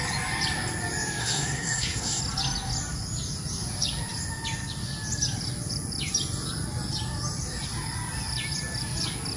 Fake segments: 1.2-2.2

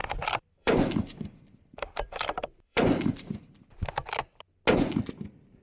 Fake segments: 0.0-3.4

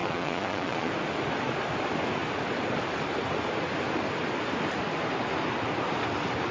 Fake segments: 0.0-0.9

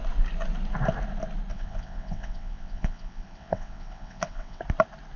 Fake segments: 1.5-4.6